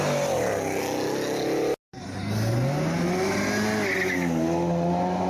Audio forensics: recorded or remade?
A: recorded